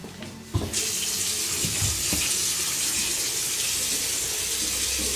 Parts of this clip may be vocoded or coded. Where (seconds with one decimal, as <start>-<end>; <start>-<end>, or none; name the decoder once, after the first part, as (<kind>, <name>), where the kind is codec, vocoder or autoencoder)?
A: none